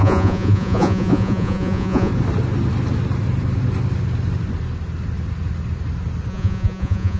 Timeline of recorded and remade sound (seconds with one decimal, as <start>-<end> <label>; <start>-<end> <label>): 0.0-2.1 remade; 2.1-6.3 recorded; 6.3-7.2 remade